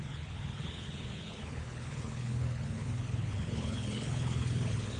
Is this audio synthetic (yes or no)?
yes